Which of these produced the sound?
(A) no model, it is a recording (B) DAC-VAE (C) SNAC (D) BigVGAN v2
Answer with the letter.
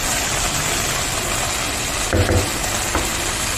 A